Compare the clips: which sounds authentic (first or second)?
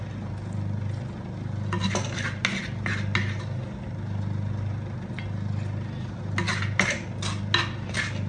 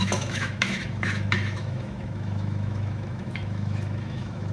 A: first